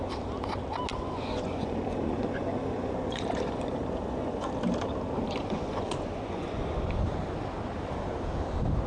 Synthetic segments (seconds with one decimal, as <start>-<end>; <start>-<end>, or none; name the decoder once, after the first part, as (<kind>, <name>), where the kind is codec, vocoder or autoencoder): 0.9-4.5 (vocoder, Vocos); 5.4-6.9